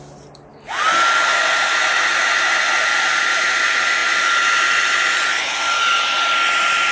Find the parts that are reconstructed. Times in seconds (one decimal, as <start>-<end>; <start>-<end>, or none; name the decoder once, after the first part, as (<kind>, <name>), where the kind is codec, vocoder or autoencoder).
none